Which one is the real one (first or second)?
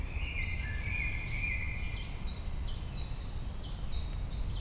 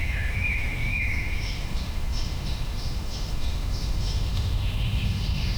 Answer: first